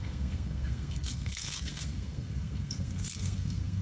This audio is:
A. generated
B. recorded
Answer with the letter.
A